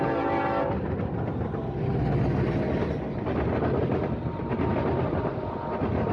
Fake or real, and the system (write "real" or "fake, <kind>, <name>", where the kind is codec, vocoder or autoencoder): real